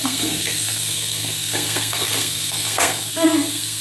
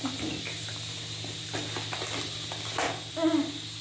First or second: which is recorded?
second